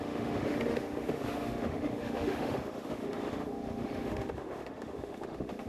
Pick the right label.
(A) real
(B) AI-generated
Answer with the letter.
B